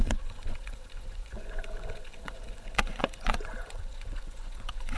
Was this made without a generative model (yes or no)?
no